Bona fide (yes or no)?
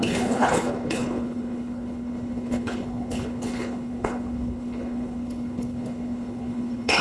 no